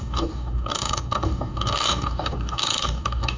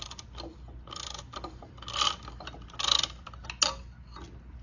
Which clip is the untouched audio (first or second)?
second